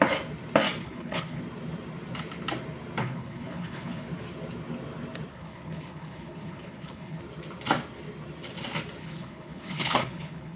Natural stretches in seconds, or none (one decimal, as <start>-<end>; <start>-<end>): 0.0-0.8; 1.4-3.0; 4.0-5.3; 7.2-9.0

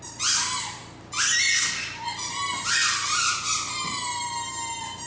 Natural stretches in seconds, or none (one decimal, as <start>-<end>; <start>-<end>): 0.0-5.1

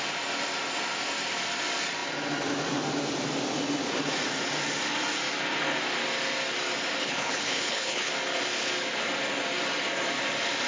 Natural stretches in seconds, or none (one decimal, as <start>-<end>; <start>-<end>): 0.0-7.0; 8.1-10.7

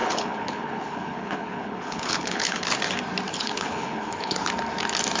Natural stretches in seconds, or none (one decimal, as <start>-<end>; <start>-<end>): 2.7-3.3; 4.5-5.2

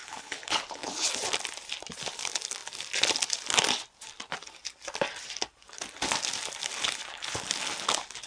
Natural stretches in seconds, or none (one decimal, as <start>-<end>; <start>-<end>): 1.1-8.3

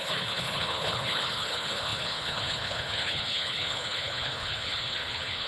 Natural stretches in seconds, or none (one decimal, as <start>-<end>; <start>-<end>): none